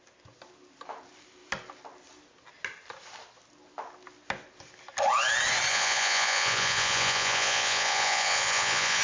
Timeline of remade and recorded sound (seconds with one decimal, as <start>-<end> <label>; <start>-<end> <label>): 0.0-5.7 recorded; 5.7-9.0 remade